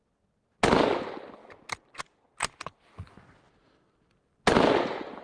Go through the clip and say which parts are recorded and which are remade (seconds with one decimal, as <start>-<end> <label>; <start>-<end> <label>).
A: 0.0-5.2 recorded